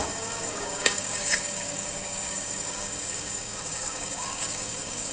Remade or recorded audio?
remade